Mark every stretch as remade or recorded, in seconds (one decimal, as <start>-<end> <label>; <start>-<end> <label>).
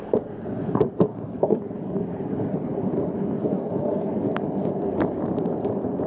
0.0-1.1 recorded; 1.1-1.6 remade; 1.6-3.4 recorded; 3.4-4.1 remade; 4.1-6.1 recorded